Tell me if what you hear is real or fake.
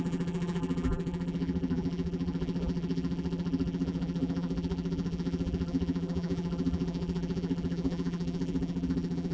fake